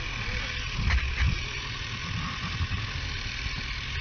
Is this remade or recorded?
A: recorded